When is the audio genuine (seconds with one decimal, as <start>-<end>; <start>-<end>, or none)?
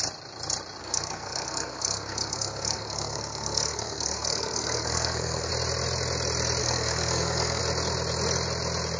0.0-0.8; 5.5-6.6; 7.6-9.0